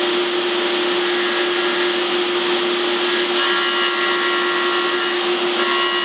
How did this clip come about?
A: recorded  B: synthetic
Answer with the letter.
A